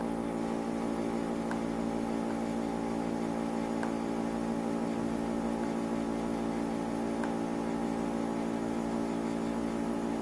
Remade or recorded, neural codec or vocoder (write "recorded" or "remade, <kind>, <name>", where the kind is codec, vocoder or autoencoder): recorded